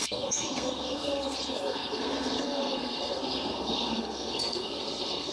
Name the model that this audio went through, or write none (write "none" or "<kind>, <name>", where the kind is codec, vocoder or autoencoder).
codec, SNAC